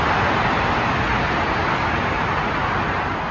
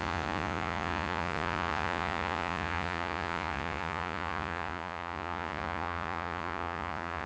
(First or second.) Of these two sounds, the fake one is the second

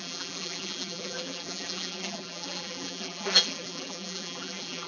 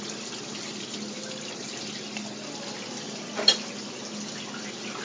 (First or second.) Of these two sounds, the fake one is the first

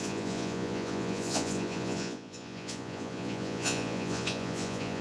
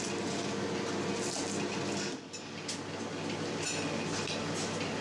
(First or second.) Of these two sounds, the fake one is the first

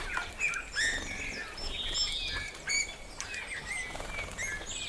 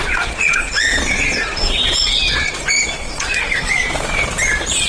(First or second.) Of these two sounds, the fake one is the second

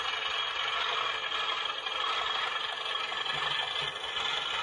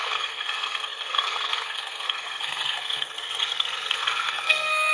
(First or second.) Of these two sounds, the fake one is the second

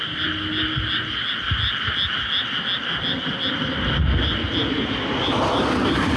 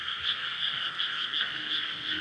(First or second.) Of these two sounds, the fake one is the second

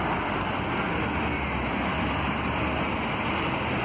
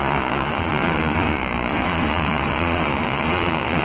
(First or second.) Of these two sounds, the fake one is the second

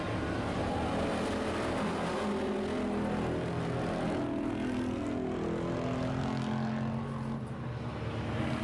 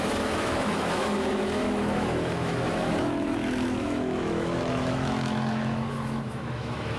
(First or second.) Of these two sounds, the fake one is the second